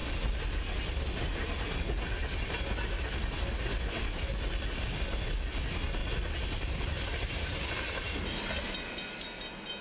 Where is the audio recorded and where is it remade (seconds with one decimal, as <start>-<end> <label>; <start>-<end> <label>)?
0.0-9.8 recorded